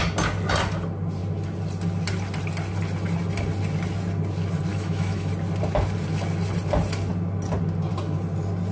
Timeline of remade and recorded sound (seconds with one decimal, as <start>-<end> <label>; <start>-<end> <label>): 0.0-4.7 recorded; 4.7-5.3 remade; 5.3-8.7 recorded